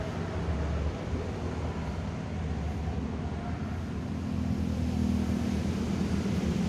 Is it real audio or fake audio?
real